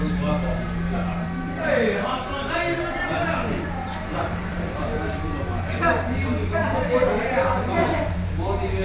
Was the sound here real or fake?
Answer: fake